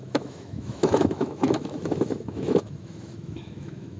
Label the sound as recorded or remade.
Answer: remade